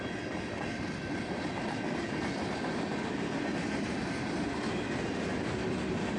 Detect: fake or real real